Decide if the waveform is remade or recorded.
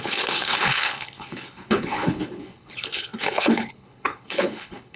remade